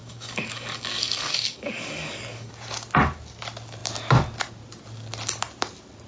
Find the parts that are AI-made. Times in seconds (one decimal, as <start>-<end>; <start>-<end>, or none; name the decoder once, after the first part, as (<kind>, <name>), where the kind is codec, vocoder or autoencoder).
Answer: 0.0-2.5 (codec, DAC)